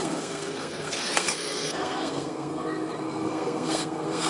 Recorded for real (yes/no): no